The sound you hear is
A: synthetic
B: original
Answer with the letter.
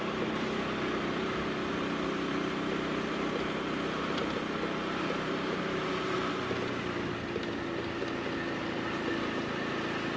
B